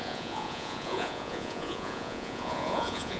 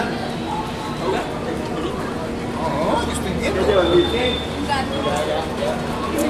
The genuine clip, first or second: second